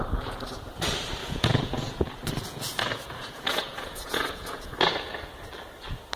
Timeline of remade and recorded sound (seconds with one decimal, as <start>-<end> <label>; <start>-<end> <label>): 0.0-1.2 recorded; 1.2-2.1 remade; 2.1-2.7 recorded; 2.7-5.1 remade; 5.1-6.2 recorded